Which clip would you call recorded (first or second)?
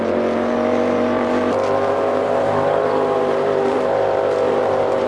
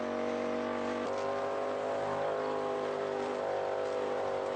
second